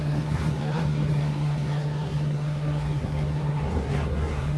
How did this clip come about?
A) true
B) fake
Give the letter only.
B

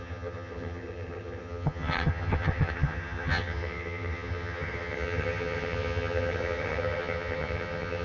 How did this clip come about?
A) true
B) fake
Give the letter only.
B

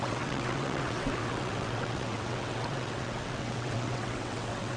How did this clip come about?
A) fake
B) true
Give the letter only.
A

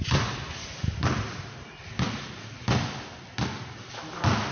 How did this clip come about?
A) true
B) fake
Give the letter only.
A